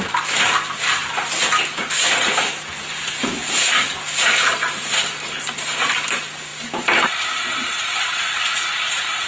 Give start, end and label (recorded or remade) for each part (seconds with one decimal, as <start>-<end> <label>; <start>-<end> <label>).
0.0-9.3 recorded